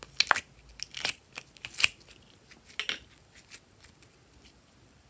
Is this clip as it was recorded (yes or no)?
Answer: yes